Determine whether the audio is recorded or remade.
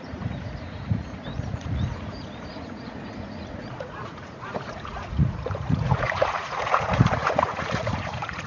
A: remade